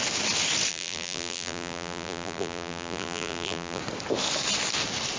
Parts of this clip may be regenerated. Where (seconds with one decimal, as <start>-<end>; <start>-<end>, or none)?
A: 0.7-3.8